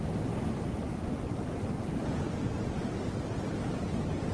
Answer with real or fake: real